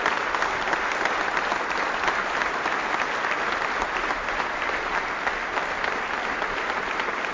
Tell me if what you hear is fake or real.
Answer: real